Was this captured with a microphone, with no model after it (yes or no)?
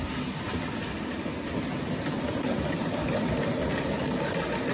yes